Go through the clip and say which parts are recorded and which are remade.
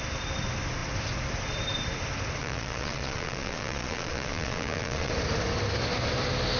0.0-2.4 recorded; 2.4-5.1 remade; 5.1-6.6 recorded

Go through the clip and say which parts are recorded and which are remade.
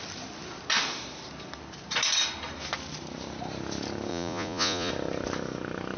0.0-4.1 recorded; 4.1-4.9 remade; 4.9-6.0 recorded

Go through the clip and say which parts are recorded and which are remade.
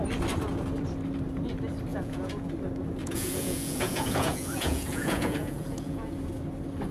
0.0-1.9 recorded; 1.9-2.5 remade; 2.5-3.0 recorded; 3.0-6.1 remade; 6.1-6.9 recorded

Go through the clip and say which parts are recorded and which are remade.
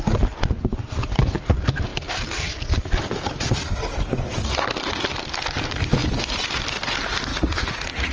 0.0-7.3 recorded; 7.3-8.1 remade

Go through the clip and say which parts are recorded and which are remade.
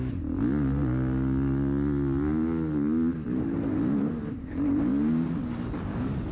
0.0-6.3 recorded